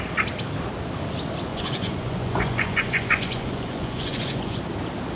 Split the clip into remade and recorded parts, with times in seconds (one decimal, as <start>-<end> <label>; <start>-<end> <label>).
0.0-1.5 recorded; 1.5-4.6 remade; 4.6-5.2 recorded